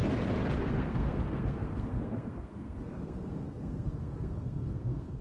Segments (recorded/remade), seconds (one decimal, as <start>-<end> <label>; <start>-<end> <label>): 0.0-0.6 recorded; 0.6-5.2 remade